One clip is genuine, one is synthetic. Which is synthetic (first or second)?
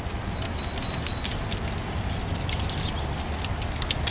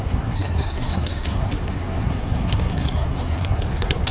second